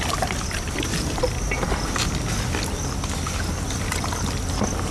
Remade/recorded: recorded